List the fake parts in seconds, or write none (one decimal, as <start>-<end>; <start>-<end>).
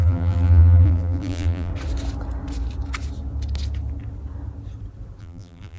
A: 0.0-1.7; 5.2-5.8